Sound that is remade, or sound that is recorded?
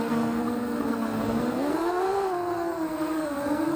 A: remade